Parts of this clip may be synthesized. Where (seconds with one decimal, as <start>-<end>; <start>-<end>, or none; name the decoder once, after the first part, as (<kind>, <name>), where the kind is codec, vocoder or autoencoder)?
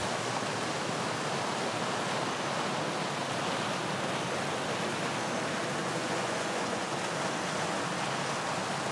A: 5.8-7.0 (vocoder, Vocos)